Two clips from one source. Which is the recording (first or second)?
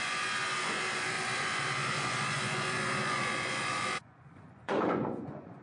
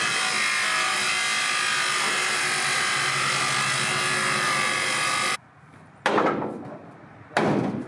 second